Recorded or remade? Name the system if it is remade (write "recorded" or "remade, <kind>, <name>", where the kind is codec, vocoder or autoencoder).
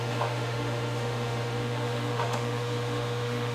remade, autoencoder, DAC-VAE